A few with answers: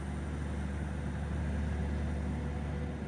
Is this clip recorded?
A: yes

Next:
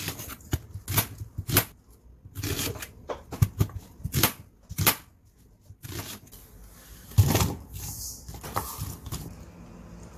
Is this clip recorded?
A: yes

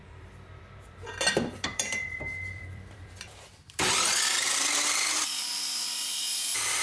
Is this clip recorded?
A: no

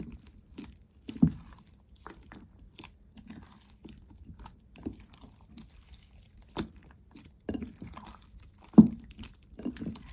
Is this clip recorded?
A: no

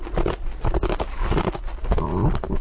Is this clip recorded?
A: no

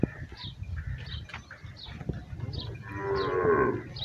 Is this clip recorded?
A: yes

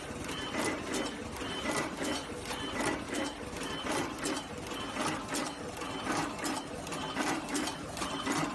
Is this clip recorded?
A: yes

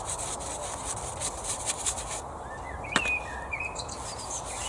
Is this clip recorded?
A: no